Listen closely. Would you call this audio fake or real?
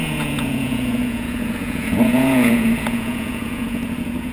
fake